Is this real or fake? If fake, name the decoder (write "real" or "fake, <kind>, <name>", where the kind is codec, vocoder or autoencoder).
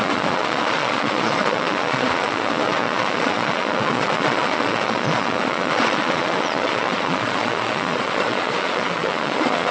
fake, vocoder, Vocos